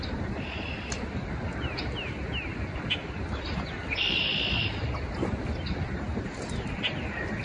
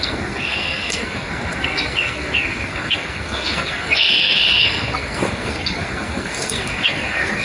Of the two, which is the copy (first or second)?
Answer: second